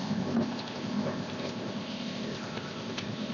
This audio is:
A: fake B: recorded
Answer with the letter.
A